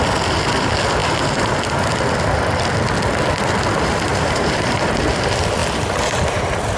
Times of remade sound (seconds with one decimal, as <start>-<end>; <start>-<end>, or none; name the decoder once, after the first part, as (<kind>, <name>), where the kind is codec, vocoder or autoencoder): 4.1-4.8 (vocoder, BigVGAN v2)